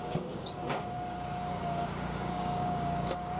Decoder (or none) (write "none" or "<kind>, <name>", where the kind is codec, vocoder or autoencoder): codec, DAC